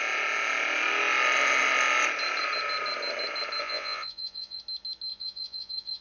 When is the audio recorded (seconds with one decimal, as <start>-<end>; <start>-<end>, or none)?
0.0-3.6; 4.6-5.1

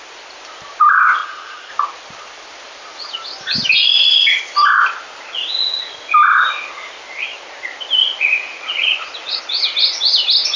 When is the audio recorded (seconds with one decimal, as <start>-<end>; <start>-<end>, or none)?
0.0-1.2; 1.7-8.0; 9.4-10.6